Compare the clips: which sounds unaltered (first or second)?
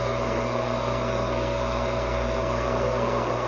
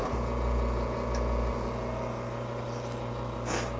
second